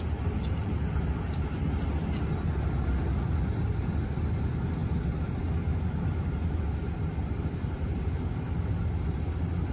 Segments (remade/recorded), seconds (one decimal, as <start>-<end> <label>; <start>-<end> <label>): 0.0-9.7 recorded